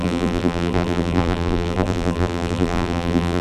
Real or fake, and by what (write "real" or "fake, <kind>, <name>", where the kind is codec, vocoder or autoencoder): fake, vocoder, BigVGAN v2